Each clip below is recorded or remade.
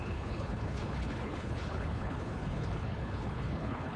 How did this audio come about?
remade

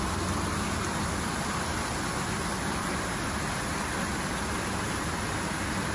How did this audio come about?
recorded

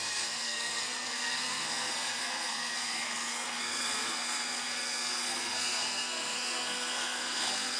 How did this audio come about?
remade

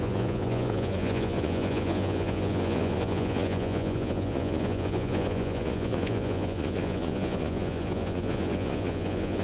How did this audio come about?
remade